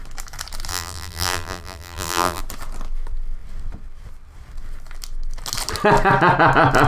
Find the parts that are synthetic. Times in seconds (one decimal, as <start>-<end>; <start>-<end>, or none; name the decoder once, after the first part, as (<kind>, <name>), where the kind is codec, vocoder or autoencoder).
0.7-2.4 (vocoder, BigVGAN v2)